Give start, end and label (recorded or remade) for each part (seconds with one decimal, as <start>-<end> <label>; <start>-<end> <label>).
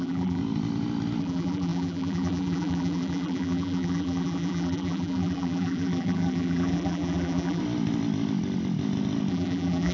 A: 0.0-0.4 remade; 0.4-1.2 recorded; 1.2-7.6 remade; 7.6-9.3 recorded; 9.3-9.9 remade